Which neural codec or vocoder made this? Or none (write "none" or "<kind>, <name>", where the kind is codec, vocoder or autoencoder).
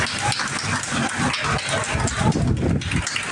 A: none